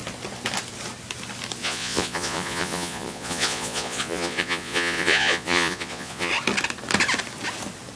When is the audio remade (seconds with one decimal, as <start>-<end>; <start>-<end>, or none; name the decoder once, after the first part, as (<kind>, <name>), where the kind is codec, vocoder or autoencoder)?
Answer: 1.6-6.3 (vocoder, Vocos)